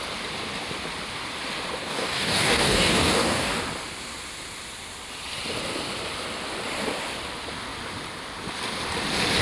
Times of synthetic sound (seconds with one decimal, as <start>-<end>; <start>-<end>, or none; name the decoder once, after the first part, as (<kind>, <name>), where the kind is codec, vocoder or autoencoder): 1.8-3.6 (codec, DAC)